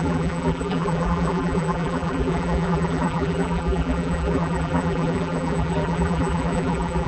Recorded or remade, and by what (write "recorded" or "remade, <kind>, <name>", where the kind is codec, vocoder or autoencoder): remade, vocoder, BigVGAN v2